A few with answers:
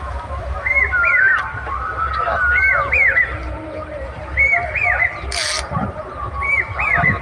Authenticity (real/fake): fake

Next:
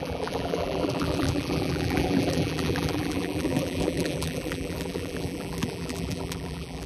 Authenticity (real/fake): fake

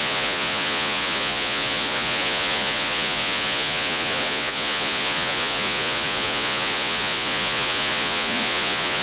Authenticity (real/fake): fake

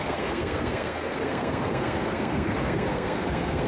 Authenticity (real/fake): fake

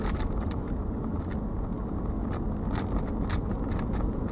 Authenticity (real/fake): real